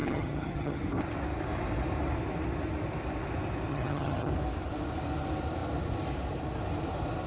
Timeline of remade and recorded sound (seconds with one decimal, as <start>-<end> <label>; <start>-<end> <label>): 0.0-0.8 remade; 0.8-3.7 recorded; 3.7-4.3 remade; 4.3-7.3 recorded